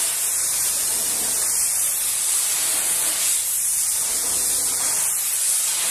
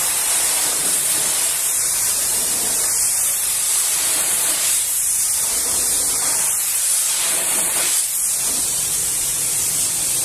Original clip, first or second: first